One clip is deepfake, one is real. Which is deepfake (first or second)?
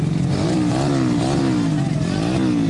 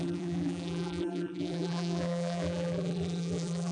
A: second